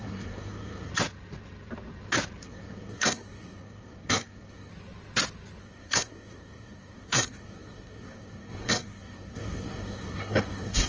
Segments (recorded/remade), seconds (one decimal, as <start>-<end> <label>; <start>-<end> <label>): 0.0-0.9 remade; 0.9-2.4 recorded; 2.4-4.7 remade; 4.7-5.6 recorded; 5.6-10.9 remade